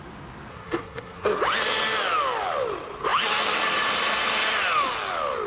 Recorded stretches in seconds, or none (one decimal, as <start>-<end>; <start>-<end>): 0.0-0.5; 1.4-5.5